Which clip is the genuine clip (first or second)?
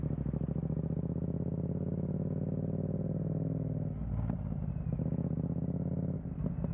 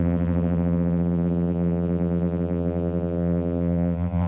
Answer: first